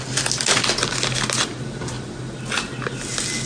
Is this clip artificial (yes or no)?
no